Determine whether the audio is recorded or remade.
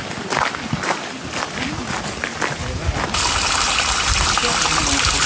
recorded